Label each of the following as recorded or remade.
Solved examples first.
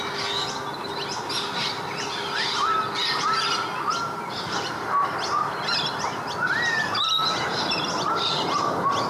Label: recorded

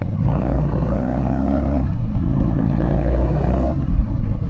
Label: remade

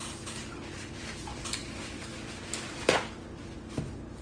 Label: recorded